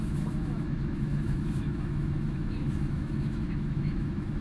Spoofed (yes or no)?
yes